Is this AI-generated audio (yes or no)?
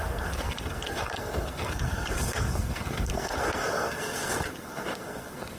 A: yes